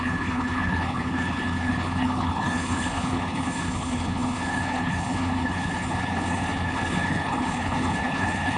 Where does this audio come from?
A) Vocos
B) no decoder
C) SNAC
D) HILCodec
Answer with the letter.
D